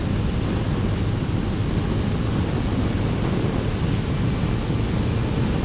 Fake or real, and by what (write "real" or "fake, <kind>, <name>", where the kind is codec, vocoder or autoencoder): real